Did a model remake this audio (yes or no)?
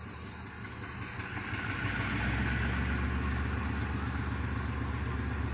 no